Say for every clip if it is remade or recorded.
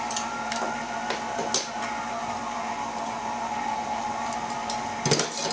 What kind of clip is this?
recorded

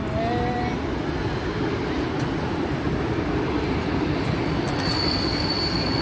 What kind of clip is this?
recorded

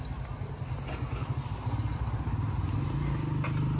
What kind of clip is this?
recorded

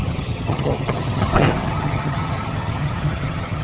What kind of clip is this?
remade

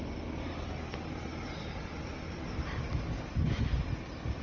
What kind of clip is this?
recorded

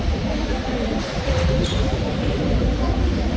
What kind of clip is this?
recorded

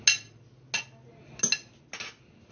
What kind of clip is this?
recorded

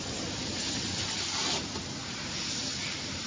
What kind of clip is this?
recorded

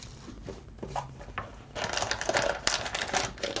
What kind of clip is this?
recorded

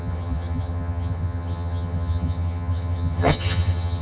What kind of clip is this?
remade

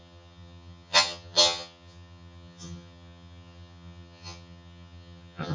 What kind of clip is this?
remade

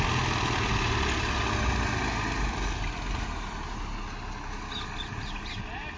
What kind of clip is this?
recorded